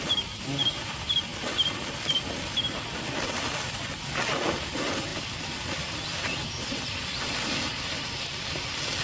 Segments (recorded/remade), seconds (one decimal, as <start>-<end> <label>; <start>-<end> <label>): 0.0-9.0 recorded